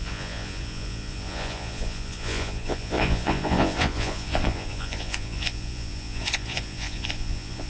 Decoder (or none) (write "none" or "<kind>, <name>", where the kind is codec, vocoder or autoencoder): vocoder, Vocos